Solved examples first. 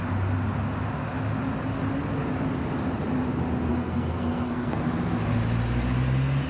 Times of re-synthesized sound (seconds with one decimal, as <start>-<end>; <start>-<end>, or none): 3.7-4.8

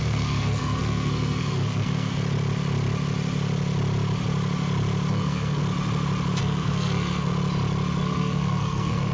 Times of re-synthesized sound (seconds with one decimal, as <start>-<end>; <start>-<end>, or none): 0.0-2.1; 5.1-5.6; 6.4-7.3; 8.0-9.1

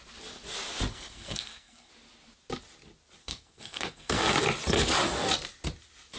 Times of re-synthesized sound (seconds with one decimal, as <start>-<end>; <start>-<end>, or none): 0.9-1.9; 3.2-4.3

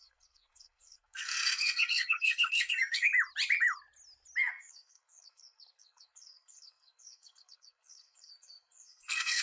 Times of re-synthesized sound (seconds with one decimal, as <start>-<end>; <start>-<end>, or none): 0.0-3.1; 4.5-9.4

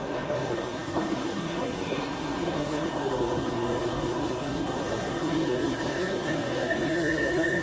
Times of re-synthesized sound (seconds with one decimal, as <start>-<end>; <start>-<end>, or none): 0.0-7.6

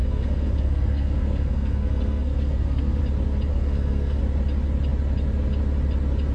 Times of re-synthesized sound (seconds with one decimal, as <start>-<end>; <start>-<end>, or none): 0.0-3.0; 3.5-4.2